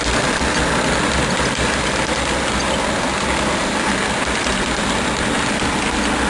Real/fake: real